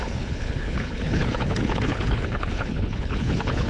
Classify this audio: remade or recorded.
remade